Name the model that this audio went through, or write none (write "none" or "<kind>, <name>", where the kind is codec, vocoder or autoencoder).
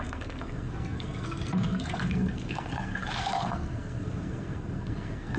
codec, SNAC